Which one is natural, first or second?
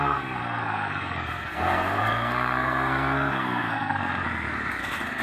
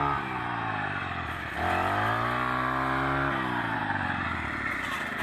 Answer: second